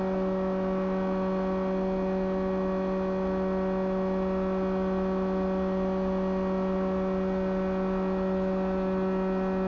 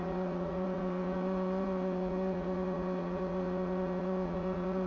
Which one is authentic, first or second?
first